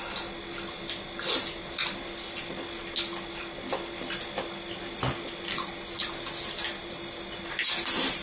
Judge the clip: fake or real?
real